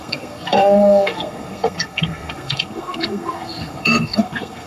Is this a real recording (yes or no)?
no